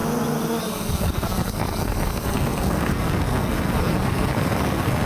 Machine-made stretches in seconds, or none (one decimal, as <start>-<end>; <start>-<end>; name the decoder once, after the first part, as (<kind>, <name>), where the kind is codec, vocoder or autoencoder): 0.6-5.1 (codec, SNAC)